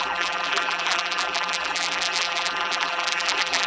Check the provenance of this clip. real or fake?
fake